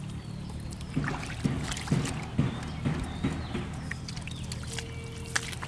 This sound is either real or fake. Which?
real